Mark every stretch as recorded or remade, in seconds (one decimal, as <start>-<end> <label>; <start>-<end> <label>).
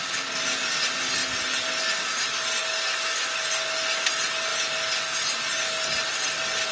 0.0-6.7 recorded